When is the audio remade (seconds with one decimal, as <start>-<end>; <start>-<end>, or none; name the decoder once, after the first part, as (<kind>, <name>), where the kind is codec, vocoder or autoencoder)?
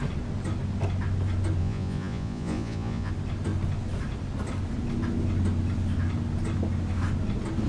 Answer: 1.6-3.1 (vocoder, Vocos)